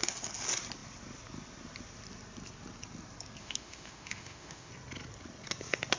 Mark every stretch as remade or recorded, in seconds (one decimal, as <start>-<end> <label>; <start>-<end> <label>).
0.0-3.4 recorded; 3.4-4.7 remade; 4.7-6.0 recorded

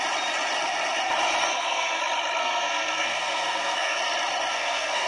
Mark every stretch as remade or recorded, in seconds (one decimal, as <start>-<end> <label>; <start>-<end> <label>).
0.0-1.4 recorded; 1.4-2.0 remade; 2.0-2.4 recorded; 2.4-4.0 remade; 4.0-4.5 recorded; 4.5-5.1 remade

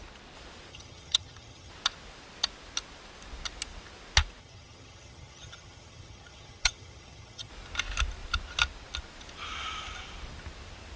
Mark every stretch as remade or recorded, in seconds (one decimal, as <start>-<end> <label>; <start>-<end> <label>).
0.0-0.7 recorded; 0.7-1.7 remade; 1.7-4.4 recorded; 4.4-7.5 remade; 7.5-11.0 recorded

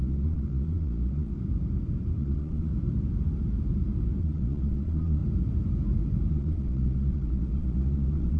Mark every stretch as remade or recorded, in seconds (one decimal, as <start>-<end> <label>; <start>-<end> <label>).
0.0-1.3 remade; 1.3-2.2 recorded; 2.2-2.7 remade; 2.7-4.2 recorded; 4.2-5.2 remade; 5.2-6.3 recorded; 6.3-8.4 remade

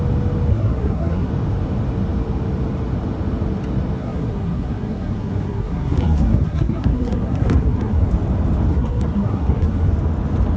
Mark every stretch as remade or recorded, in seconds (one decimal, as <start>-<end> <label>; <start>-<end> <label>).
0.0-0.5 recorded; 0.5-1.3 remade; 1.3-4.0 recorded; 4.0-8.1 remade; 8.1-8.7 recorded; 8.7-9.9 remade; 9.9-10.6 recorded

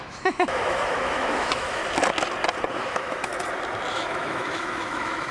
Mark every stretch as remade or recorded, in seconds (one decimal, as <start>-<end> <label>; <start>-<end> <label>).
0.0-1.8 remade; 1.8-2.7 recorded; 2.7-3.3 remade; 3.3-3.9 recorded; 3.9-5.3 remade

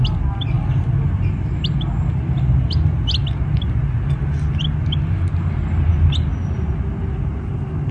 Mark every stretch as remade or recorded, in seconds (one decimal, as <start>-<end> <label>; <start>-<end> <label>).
0.0-7.9 recorded

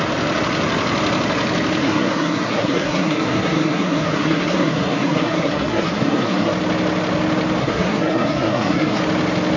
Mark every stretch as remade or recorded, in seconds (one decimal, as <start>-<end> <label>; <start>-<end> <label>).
0.0-1.8 recorded; 1.8-6.5 remade; 6.5-7.6 recorded; 7.6-9.0 remade; 9.0-9.6 recorded